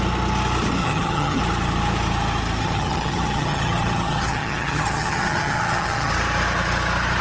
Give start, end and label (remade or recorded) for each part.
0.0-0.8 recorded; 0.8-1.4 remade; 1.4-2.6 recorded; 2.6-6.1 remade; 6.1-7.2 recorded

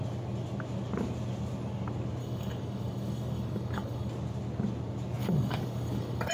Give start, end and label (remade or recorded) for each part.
0.0-2.2 recorded; 2.2-4.1 remade; 4.1-5.2 recorded; 5.2-6.3 remade

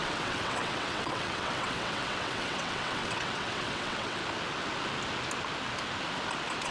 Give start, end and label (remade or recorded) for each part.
0.0-4.2 remade; 4.2-6.7 recorded

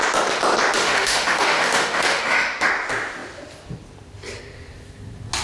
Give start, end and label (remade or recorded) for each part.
0.0-0.8 recorded; 0.8-2.7 remade; 2.7-5.4 recorded

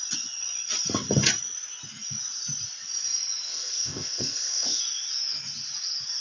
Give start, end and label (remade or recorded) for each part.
0.0-3.5 recorded; 3.5-4.8 remade; 4.8-6.2 recorded

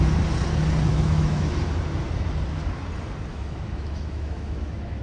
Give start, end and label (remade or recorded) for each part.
0.0-0.9 recorded; 0.9-1.5 remade; 1.5-3.3 recorded; 3.3-5.0 remade

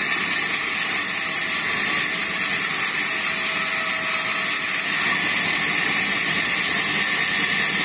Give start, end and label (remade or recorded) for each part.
0.0-7.8 recorded

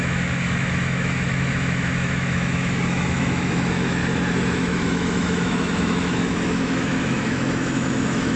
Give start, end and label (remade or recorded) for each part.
0.0-4.0 remade; 4.0-4.5 recorded; 4.5-8.4 remade